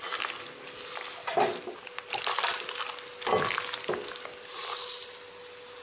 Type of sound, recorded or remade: recorded